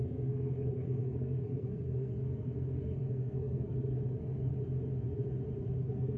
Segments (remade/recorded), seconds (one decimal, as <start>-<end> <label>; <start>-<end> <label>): 0.0-4.5 remade; 4.5-5.6 recorded; 5.6-6.2 remade